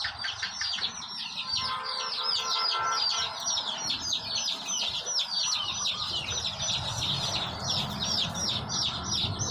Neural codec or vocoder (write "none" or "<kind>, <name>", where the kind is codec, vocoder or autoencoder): none